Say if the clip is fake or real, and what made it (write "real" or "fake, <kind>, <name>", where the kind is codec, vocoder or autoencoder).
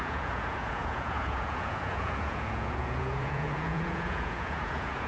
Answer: fake, vocoder, Vocos